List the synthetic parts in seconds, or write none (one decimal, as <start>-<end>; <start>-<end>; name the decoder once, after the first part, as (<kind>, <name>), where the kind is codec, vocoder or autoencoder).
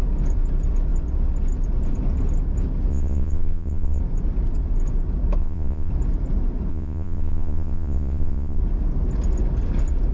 2.9-4.0 (vocoder, Vocos); 5.4-5.9; 6.7-8.6